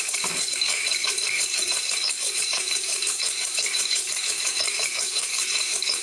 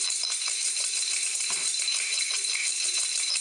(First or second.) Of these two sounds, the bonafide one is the second